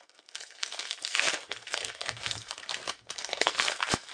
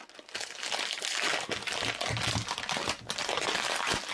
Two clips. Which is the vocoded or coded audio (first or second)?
first